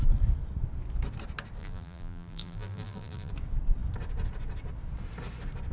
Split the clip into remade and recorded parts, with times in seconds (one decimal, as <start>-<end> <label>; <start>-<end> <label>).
0.0-1.6 recorded; 1.6-3.3 remade; 3.3-5.7 recorded